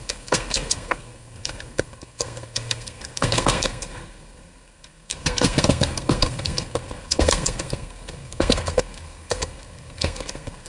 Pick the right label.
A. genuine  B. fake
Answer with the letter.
B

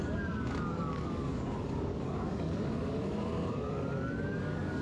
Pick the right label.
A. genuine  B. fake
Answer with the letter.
B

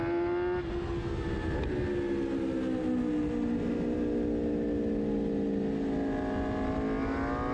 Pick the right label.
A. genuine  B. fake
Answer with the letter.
A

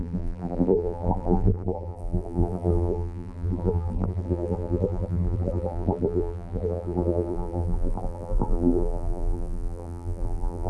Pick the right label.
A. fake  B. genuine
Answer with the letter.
A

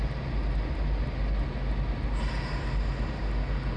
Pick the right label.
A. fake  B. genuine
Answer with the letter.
B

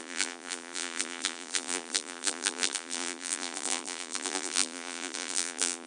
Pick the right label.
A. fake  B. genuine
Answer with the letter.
A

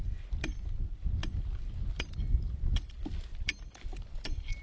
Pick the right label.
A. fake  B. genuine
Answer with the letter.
A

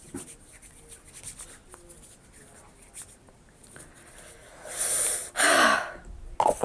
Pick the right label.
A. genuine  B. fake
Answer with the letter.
A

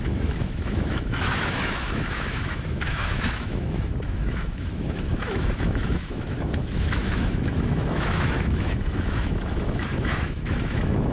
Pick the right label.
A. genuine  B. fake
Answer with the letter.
B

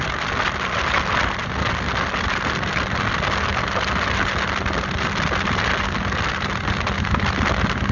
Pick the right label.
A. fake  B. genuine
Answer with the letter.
B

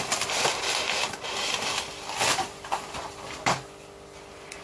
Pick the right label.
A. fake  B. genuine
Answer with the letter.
A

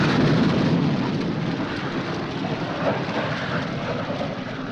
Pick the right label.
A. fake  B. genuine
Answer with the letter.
B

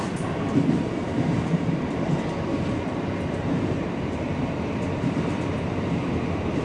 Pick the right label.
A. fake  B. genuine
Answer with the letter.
A